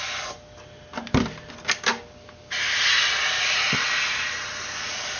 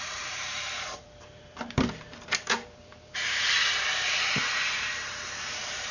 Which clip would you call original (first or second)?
first